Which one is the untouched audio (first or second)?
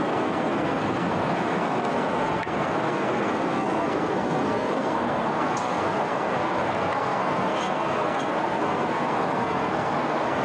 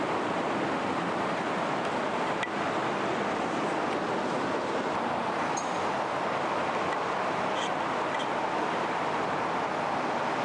second